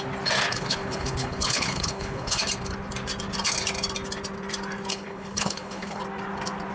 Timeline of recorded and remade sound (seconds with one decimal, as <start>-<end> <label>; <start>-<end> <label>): 0.0-0.5 recorded; 0.5-2.4 remade; 2.4-4.9 recorded; 4.9-6.0 remade; 6.0-6.7 recorded